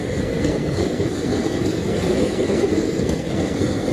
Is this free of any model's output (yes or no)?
no